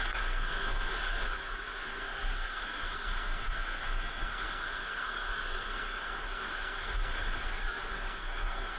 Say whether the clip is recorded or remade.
remade